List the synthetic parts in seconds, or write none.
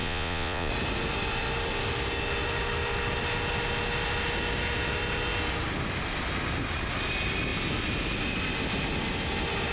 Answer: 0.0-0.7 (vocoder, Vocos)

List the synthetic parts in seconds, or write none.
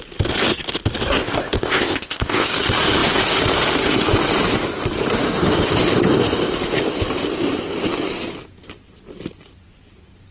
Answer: 1.2-2.5 (codec, ZipCodec)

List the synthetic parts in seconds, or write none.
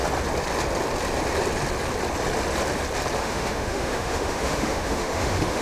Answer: 3.2-5.6 (autoencoder, DAC-VAE)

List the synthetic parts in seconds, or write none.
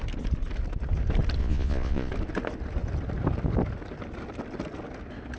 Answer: 1.4-2.1 (vocoder, Vocos)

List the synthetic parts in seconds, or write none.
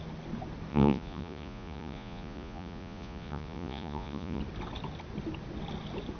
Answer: 0.7-4.4 (vocoder, Vocos)